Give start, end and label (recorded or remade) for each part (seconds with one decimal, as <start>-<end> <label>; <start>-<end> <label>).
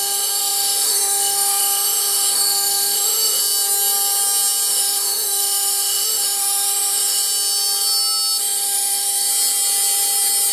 0.0-3.4 remade; 3.4-4.7 recorded; 4.7-7.2 remade; 7.2-8.4 recorded; 8.4-9.3 remade; 9.3-10.5 recorded